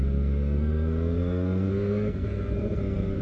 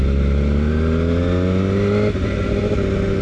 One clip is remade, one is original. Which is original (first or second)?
second